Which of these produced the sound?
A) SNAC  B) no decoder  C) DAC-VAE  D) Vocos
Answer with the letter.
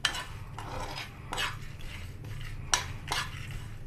B